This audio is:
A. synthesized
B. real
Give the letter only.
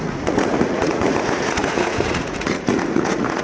A